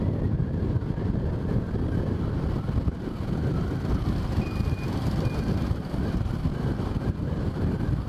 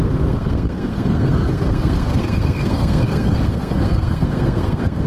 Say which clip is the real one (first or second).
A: first